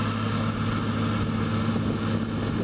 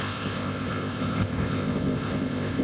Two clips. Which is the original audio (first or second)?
first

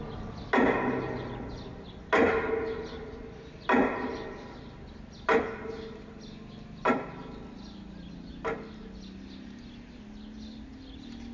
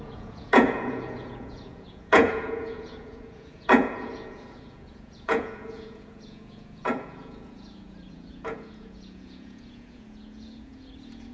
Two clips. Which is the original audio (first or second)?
first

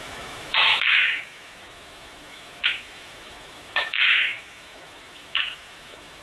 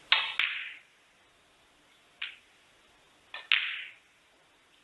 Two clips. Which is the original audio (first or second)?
second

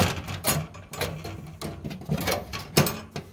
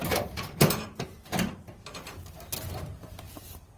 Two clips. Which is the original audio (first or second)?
first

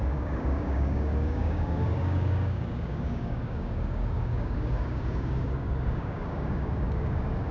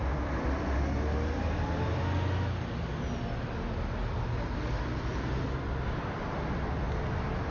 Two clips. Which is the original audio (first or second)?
second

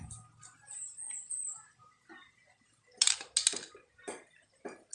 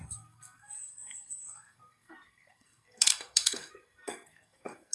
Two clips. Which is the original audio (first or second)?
first